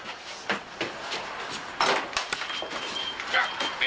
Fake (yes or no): no